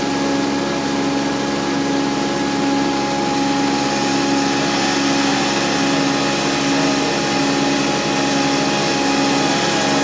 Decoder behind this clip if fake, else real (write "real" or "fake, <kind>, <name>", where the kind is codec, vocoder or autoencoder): real